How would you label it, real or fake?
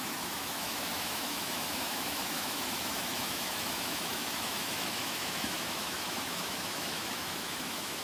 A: fake